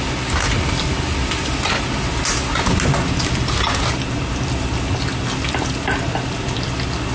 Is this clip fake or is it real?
real